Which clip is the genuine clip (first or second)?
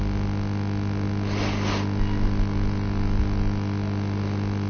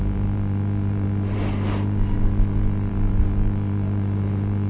first